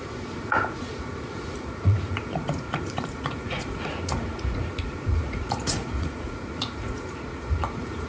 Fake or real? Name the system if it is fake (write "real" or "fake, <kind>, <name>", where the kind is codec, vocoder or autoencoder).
fake, vocoder, Vocos